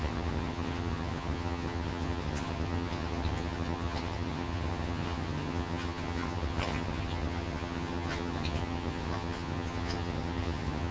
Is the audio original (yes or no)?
no